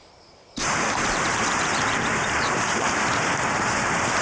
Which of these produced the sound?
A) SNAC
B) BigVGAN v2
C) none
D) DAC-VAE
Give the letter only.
B